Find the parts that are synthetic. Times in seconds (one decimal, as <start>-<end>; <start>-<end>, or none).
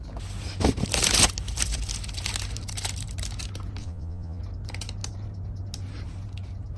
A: 3.8-4.4